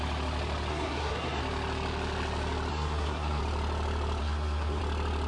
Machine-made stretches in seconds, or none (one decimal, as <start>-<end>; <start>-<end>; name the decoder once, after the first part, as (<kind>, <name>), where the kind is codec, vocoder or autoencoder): 0.7-1.4 (codec, SNAC); 2.7-3.4; 4.2-4.8